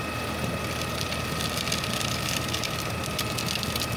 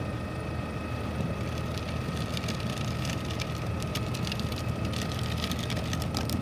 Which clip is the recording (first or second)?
first